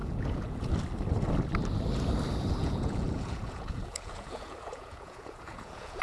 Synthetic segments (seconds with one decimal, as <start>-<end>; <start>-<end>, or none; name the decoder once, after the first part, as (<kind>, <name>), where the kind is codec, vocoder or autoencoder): 0.0-0.7 (vocoder, Vocos); 2.6-6.0